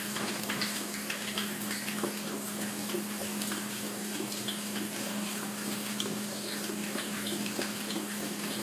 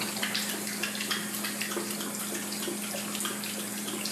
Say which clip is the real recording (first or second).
second